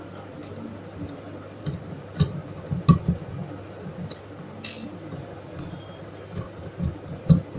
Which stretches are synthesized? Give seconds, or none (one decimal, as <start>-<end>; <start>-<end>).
none